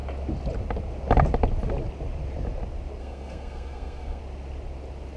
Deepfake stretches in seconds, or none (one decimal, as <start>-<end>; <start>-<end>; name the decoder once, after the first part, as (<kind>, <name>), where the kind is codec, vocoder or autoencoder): 3.0-4.2 (codec, SNAC)